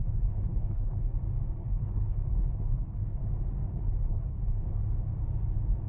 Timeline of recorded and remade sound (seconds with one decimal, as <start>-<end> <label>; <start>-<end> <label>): 0.0-1.1 remade; 1.1-1.6 recorded; 1.6-3.2 remade; 3.2-3.7 recorded; 3.7-4.8 remade; 4.8-5.9 recorded